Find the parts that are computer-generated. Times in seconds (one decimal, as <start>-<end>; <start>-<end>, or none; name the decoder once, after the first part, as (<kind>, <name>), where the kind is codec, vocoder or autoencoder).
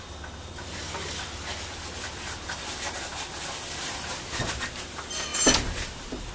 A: none